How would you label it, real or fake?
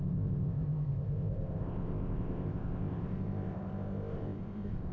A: fake